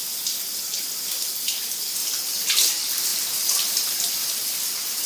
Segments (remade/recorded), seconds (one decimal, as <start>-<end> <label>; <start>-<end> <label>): 0.0-5.1 recorded